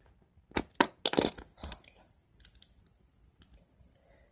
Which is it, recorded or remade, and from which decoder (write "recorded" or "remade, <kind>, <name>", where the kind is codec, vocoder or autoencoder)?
recorded